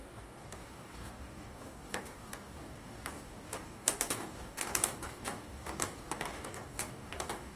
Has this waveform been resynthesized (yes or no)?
yes